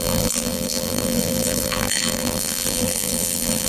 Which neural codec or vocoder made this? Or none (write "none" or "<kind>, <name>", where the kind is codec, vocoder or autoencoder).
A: vocoder, BigVGAN v2